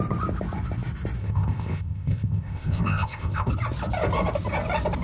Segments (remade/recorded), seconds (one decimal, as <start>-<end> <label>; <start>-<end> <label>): 0.0-1.2 recorded; 1.2-3.5 remade; 3.5-5.0 recorded